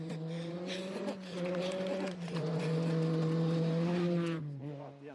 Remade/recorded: remade